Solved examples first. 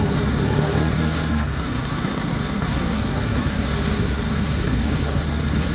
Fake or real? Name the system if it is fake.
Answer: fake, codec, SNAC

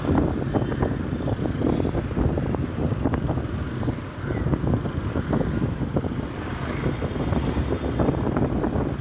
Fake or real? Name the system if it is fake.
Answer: real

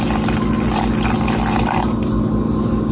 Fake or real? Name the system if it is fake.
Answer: real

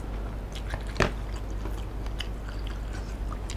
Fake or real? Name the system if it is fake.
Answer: real